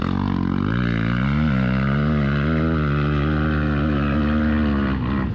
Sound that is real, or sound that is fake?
real